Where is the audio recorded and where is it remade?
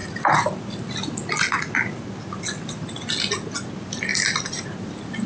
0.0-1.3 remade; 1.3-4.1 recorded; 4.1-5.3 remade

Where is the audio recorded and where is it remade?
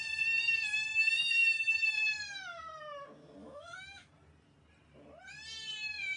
0.0-0.9 recorded; 0.9-2.1 remade; 2.1-3.4 recorded; 3.4-4.1 remade; 4.1-6.2 recorded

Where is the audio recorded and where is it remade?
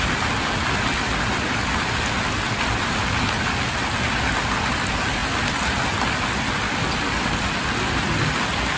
0.0-8.8 recorded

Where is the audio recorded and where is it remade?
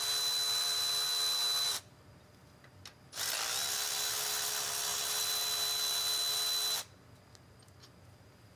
0.0-8.6 recorded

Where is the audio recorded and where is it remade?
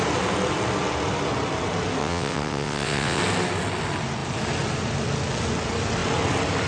0.0-2.0 recorded; 2.0-3.2 remade; 3.2-6.7 recorded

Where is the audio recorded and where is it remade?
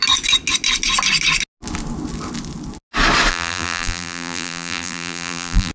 0.0-3.3 recorded; 3.3-5.7 remade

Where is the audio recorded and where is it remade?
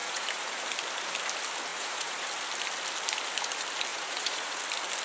0.0-0.6 remade; 0.6-1.7 recorded; 1.7-2.3 remade; 2.3-3.9 recorded; 3.9-4.6 remade; 4.6-5.0 recorded